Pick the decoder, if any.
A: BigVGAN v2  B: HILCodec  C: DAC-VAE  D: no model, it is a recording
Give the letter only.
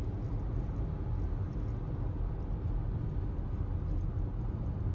D